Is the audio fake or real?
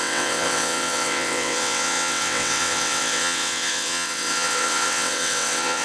fake